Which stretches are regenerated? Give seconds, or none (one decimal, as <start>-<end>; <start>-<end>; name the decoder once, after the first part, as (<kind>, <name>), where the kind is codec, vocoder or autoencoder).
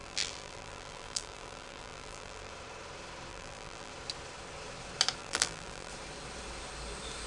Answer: 0.0-2.5 (vocoder, BigVGAN v2); 3.3-3.9; 5.2-5.9